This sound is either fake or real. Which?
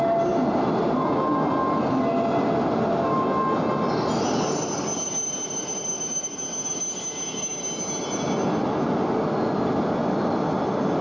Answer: real